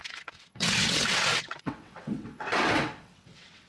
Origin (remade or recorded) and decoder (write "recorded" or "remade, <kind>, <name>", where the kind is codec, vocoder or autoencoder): remade, vocoder, WaveNeXt